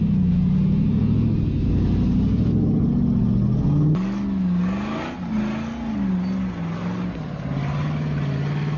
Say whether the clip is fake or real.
real